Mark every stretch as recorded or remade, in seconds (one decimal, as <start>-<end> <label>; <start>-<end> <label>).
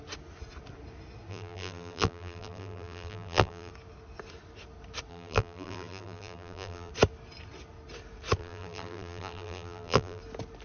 0.0-1.3 recorded; 1.3-3.7 remade; 3.7-5.1 recorded; 5.1-6.9 remade; 6.9-8.4 recorded; 8.4-10.2 remade; 10.2-10.6 recorded